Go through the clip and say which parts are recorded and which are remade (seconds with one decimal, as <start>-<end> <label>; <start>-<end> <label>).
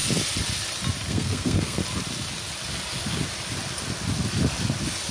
0.0-1.1 recorded; 1.1-1.8 remade; 1.8-5.1 recorded